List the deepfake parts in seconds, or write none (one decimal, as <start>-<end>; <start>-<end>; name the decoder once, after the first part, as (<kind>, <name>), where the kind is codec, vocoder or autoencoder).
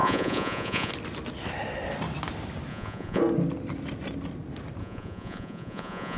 0.0-0.9 (vocoder, Vocos); 2.7-3.2; 4.8-6.2